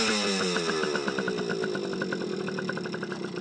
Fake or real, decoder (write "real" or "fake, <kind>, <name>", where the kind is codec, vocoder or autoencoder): real